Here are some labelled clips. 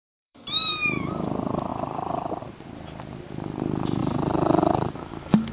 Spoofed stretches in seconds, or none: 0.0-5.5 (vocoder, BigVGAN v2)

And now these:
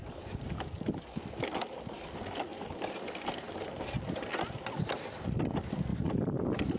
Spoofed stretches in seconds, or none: 0.0-0.9 (vocoder, BigVGAN v2); 2.5-4.1

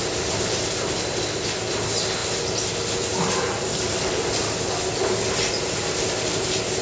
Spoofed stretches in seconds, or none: none